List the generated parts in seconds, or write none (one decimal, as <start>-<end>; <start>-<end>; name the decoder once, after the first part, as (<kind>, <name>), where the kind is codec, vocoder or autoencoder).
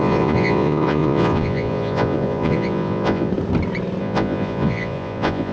0.0-3.3 (vocoder, Vocos); 4.0-5.5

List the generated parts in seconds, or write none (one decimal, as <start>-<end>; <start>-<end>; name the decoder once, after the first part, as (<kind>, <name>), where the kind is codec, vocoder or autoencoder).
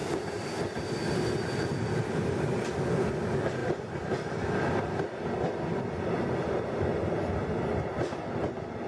none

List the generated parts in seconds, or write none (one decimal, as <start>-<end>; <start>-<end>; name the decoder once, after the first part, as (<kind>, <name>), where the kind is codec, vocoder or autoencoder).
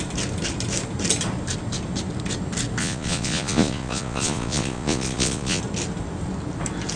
2.8-5.6 (vocoder, Vocos)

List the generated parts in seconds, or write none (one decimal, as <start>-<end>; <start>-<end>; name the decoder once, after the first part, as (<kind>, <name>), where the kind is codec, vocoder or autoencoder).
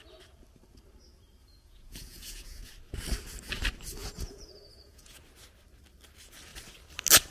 1.4-2.7 (vocoder, Vocos); 4.0-5.2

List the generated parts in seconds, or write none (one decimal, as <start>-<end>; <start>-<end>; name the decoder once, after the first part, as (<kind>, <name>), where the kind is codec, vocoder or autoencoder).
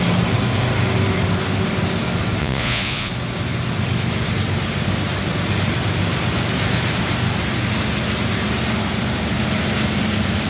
2.4-3.1 (vocoder, Vocos)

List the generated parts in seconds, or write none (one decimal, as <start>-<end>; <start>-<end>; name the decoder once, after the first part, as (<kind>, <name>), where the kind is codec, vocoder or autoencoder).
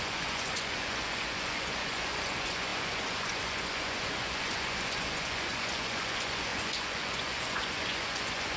0.0-8.6 (vocoder, Vocos)